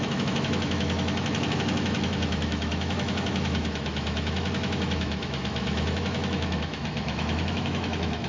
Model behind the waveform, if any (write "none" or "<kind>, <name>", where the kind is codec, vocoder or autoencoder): autoencoder, DAC-VAE